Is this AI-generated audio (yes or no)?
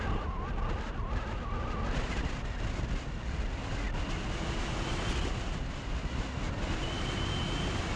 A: no